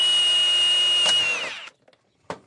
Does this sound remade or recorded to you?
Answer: recorded